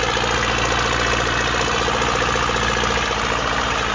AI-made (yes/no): no